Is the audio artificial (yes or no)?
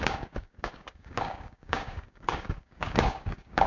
yes